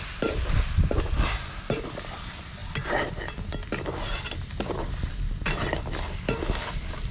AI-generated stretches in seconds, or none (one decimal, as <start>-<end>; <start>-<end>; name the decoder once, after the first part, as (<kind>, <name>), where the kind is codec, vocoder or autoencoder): none